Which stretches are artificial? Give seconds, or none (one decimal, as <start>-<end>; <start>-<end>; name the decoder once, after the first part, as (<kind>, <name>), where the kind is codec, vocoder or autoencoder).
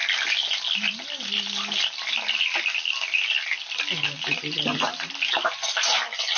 none